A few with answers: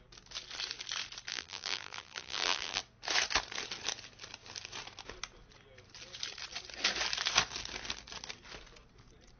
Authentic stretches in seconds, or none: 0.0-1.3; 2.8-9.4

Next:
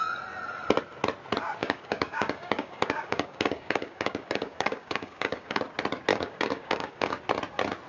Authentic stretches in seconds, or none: 0.0-1.6; 5.6-6.1; 7.2-7.9

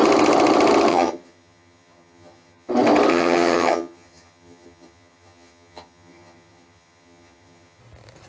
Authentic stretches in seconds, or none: 0.0-0.9; 2.7-3.1; 7.8-8.3

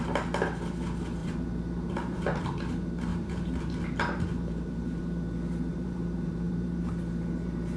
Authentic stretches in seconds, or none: 0.0-1.2; 2.4-3.1; 3.7-4.3; 5.0-5.7; 6.9-7.8

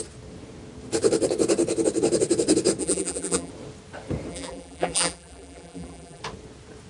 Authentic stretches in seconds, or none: 0.0-2.8; 3.5-4.3; 6.2-6.9

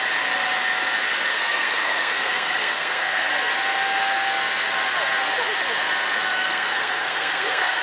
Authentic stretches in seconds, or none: 0.0-1.3; 3.3-6.3